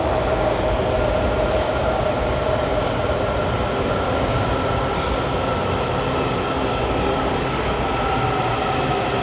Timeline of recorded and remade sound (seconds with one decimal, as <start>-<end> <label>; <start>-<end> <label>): 0.0-6.7 recorded; 6.7-7.8 remade; 7.8-9.2 recorded

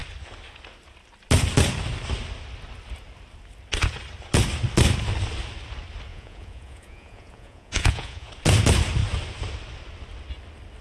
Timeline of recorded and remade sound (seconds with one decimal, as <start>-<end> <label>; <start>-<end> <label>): 0.0-6.1 recorded; 6.1-8.3 remade; 8.3-10.8 recorded

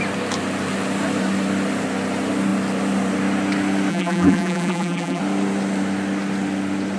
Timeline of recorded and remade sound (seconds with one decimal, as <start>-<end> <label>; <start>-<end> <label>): 0.0-3.9 recorded; 3.9-5.2 remade; 5.2-7.0 recorded

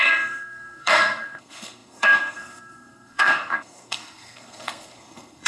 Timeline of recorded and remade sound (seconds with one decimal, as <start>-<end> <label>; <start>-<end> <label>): 0.0-5.5 remade

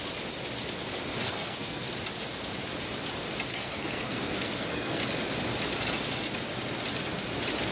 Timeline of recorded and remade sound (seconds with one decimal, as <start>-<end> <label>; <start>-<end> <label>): 0.0-1.2 recorded; 1.2-1.9 remade; 1.9-3.5 recorded; 3.5-5.0 remade; 5.0-7.7 recorded

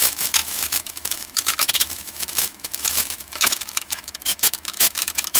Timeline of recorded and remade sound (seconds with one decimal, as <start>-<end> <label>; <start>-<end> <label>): 0.0-5.4 remade

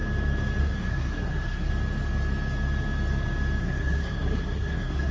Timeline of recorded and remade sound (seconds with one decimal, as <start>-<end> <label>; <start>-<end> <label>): 0.0-0.6 recorded; 0.6-1.7 remade; 1.7-3.6 recorded; 3.6-5.1 remade

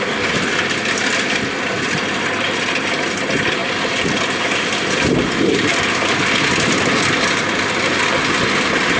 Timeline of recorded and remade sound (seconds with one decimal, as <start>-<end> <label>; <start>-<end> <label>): 0.0-9.0 recorded